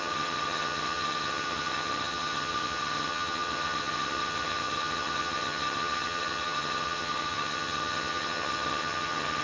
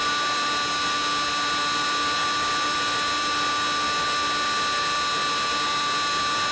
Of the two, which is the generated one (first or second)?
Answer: first